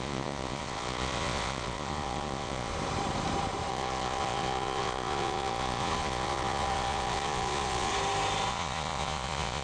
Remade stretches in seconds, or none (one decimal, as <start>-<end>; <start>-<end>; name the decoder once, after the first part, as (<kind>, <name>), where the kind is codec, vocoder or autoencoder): 0.0-2.7 (vocoder, Vocos); 3.7-7.9; 8.5-9.6